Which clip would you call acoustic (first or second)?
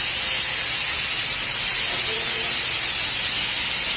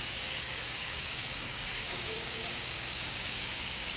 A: first